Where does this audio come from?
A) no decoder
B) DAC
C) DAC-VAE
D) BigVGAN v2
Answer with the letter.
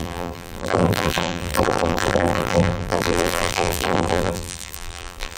D